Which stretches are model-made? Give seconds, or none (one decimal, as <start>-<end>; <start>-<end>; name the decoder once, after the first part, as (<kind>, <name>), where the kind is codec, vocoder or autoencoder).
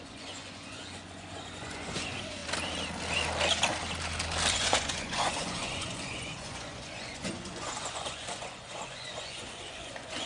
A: 0.0-2.4 (vocoder, Vocos); 4.5-10.3